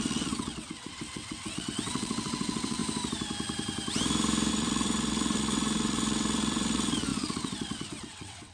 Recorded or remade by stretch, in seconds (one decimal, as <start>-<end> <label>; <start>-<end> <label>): 0.0-2.8 remade; 2.8-4.5 recorded; 4.5-8.5 remade